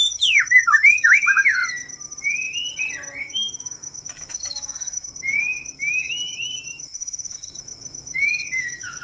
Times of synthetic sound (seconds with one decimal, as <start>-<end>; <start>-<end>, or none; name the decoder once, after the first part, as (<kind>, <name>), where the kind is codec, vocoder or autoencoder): 0.0-1.6 (autoencoder, DAC-VAE); 3.2-9.0